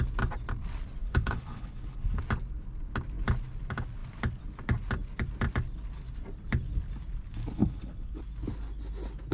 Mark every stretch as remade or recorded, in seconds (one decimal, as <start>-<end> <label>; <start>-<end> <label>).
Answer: 0.0-1.0 recorded; 1.0-2.2 remade; 2.2-7.4 recorded; 7.4-8.2 remade; 8.2-9.3 recorded